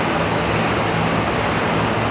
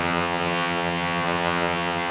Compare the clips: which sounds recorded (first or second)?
first